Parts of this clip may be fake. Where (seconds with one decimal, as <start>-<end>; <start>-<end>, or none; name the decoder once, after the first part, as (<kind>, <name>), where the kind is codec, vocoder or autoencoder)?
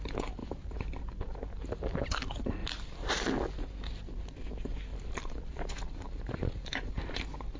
0.4-1.0 (vocoder, BigVGAN v2); 2.6-3.1; 4.9-6.9